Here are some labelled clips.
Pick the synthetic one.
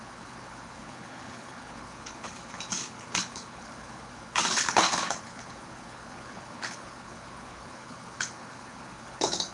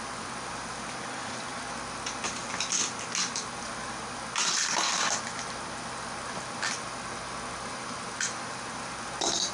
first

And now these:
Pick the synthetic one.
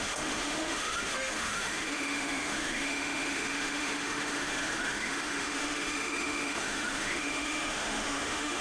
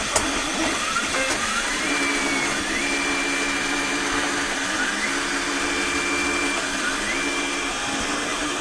first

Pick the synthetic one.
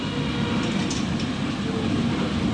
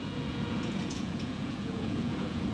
second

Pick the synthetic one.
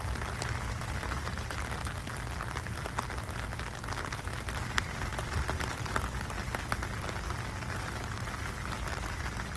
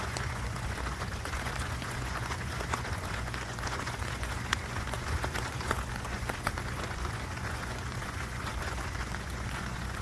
second